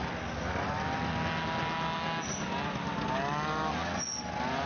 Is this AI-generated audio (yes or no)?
no